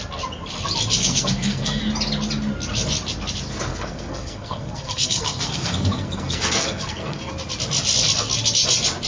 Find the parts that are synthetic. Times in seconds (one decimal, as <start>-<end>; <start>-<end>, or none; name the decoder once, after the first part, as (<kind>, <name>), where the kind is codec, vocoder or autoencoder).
1.0-1.8 (codec, SNAC); 3.7-7.3